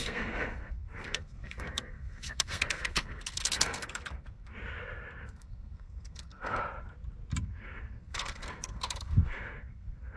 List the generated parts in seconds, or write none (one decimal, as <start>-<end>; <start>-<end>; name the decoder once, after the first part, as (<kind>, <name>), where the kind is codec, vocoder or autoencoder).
0.0-4.5 (codec, SNAC); 5.2-6.6; 7.4-10.2